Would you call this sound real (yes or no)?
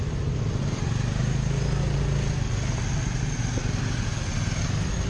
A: yes